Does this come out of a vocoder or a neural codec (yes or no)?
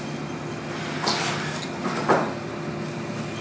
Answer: no